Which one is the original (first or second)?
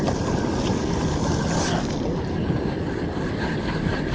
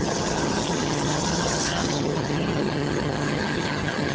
first